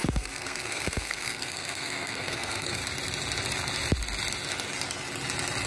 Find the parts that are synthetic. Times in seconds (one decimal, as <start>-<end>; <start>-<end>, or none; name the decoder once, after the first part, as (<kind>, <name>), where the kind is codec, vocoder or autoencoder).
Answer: 0.0-2.8 (codec, SNAC)